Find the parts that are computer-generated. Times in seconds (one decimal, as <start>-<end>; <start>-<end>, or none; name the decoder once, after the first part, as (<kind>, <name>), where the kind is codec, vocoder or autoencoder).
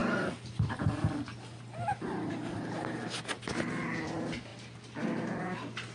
0.0-1.0 (vocoder, BigVGAN v2); 1.9-3.0